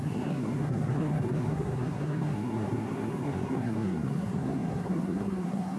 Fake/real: fake